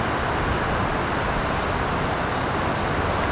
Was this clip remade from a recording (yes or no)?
no